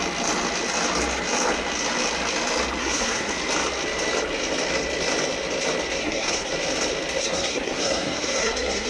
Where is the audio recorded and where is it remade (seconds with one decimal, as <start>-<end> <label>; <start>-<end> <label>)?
0.0-2.8 recorded; 2.8-3.3 remade; 3.3-6.0 recorded; 6.0-6.5 remade; 6.5-7.2 recorded; 7.2-8.9 remade